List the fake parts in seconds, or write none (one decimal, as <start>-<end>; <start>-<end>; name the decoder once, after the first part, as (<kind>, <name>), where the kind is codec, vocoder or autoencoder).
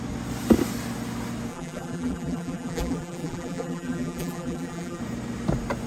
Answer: 1.5-5.0 (vocoder, BigVGAN v2)